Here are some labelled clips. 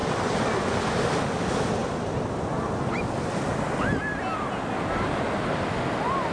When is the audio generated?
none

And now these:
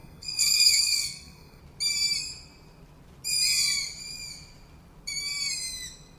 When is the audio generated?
0.0-1.6 (codec, SNAC)

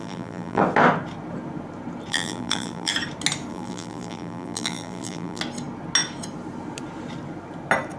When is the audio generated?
0.0-0.6 (vocoder, BigVGAN v2); 2.1-2.9; 3.5-5.4

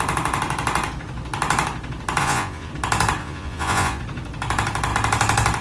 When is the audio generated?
2.2-2.7 (vocoder, Vocos); 3.2-4.0

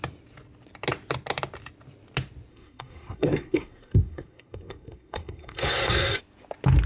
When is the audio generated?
2.5-6.2 (codec, SNAC)